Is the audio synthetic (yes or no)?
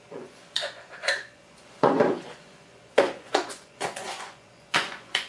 yes